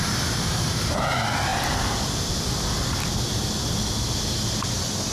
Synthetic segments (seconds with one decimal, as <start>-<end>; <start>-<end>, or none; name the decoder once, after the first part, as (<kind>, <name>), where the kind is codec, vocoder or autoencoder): none